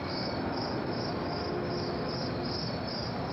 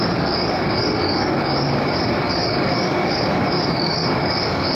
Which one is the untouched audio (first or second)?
first